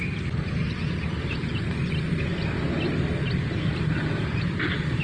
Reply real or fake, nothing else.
real